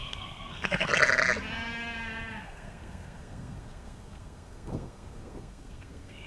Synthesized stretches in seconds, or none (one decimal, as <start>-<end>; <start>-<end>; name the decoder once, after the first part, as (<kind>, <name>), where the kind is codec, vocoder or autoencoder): 0.0-0.9 (codec, SNAC); 2.4-6.3